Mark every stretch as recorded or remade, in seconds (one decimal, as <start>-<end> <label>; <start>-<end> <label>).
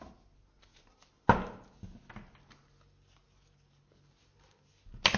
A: 0.0-5.2 recorded